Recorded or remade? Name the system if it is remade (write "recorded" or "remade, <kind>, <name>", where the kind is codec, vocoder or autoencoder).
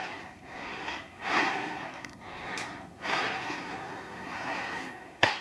remade, codec, SNAC